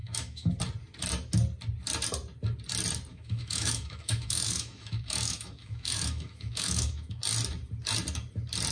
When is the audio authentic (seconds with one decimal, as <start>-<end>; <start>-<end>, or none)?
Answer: 0.5-3.1; 7.2-8.7